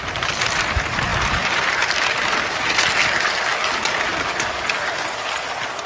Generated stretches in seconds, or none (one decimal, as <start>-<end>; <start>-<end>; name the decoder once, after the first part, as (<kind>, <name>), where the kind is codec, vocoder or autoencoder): none